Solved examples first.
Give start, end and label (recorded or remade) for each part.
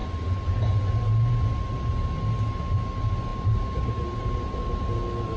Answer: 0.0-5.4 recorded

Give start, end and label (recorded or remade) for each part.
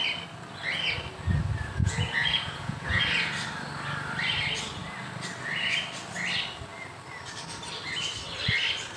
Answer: 0.0-1.8 recorded; 1.8-3.0 remade; 3.0-9.0 recorded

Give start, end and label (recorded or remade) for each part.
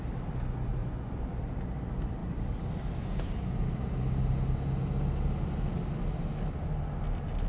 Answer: 0.0-0.8 recorded; 0.8-1.3 remade; 1.3-7.5 recorded